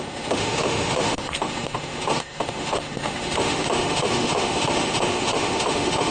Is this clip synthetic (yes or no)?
yes